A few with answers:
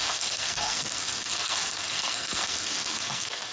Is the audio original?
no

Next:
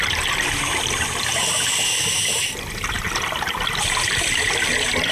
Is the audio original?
yes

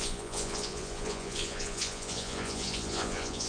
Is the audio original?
no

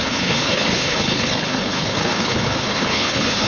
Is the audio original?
no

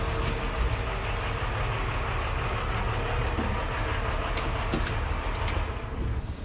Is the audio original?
yes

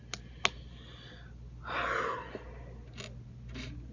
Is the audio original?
yes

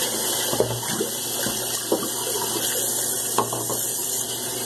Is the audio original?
yes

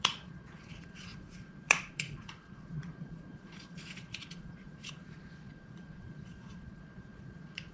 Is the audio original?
no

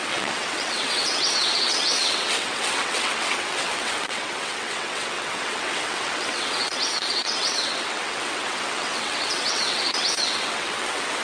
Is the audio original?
no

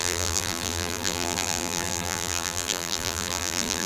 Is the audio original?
no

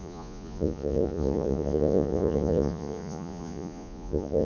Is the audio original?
no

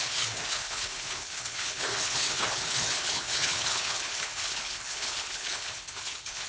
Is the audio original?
no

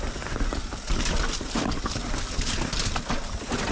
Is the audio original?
yes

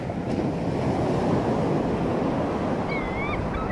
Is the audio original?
yes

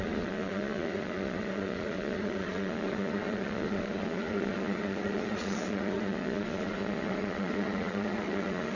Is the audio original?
no